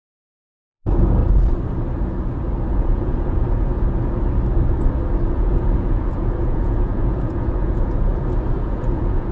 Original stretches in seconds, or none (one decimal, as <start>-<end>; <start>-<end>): 1.2-2.7; 3.7-5.2; 8.1-8.6